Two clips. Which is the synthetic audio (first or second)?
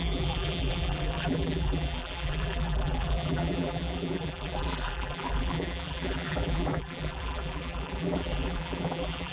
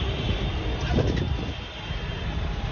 first